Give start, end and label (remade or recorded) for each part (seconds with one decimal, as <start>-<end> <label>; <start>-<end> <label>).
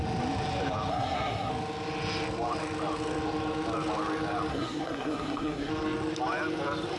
0.0-0.9 recorded; 0.9-1.5 remade; 1.5-4.5 recorded; 4.5-5.7 remade; 5.7-7.0 recorded